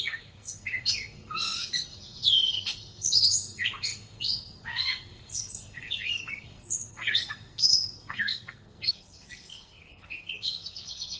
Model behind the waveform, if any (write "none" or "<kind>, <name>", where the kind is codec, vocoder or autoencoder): codec, SNAC